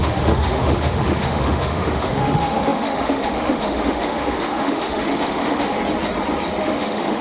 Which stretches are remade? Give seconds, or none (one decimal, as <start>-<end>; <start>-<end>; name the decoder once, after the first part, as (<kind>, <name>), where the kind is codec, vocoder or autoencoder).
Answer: 0.0-5.8 (autoencoder, DAC-VAE); 6.6-7.2